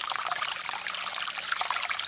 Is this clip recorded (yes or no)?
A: yes